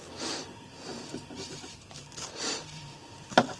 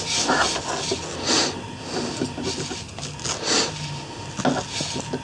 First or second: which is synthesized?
first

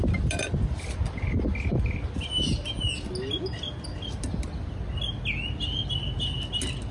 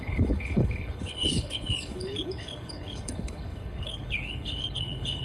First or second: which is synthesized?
second